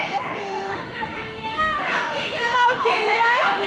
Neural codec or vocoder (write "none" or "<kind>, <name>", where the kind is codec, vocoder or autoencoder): autoencoder, DAC-VAE